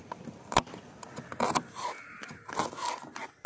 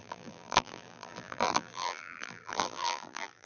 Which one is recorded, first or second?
first